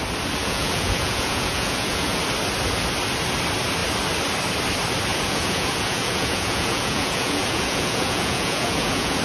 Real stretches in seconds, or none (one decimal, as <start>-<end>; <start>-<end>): 0.0-0.4; 2.2-5.1